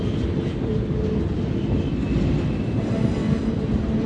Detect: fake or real real